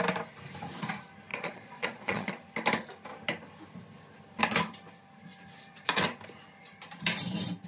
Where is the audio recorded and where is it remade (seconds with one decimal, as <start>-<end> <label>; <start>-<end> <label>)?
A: 0.0-1.3 recorded; 1.3-2.3 remade; 2.3-7.7 recorded